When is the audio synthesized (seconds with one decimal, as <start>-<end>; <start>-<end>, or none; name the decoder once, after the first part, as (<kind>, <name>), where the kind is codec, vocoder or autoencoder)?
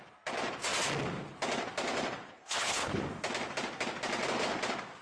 2.4-3.0 (codec, HILCodec)